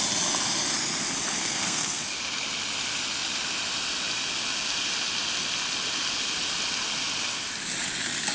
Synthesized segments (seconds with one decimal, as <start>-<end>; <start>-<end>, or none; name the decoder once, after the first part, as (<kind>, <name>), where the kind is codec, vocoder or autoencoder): 1.4-2.0 (codec, SNAC)